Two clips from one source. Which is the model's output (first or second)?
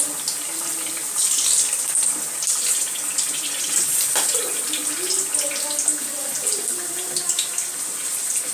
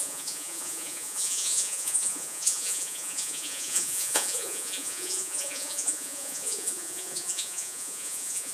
second